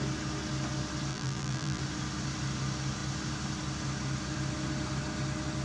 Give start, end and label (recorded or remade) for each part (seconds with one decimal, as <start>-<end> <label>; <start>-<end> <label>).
0.0-1.1 recorded; 1.1-1.8 remade; 1.8-5.6 recorded